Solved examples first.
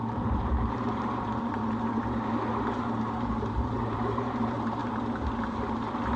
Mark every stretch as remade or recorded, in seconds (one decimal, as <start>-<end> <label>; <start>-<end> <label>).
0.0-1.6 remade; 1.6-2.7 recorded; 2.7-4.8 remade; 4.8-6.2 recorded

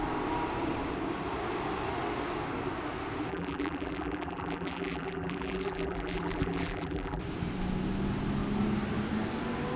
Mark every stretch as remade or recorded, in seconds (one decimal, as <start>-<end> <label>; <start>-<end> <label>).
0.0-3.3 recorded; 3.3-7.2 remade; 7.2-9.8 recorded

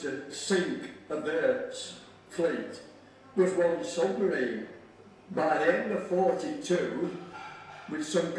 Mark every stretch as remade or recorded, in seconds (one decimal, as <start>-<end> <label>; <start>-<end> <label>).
0.0-7.4 recorded; 7.4-7.9 remade; 7.9-8.4 recorded

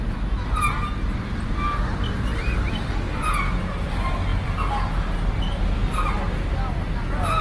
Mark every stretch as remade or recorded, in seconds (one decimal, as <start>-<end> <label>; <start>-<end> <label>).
0.0-7.4 recorded

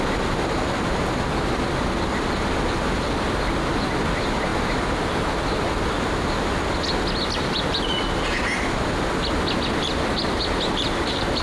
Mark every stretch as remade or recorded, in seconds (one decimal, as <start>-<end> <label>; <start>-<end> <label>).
0.0-11.4 recorded

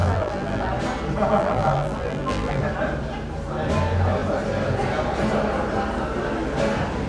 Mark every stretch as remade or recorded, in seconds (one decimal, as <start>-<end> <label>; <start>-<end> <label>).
0.0-0.7 remade; 0.7-1.3 recorded; 1.3-2.6 remade; 2.6-7.1 recorded

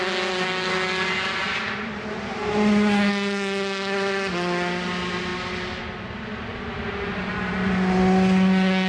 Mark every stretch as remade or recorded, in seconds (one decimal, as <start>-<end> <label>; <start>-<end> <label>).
0.0-1.4 recorded; 1.4-2.5 remade; 2.5-8.9 recorded

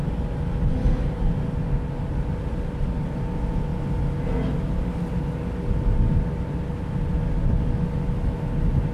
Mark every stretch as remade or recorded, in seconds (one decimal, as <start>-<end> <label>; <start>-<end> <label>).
0.0-8.9 recorded